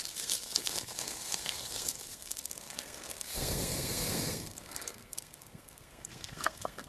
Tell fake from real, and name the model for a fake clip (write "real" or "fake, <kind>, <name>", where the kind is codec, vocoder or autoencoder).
fake, codec, SNAC